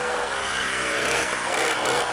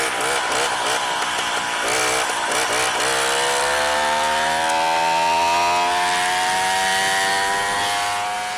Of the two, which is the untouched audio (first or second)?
second